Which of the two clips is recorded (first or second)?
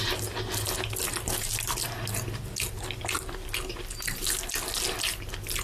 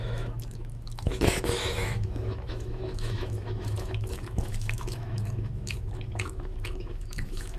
first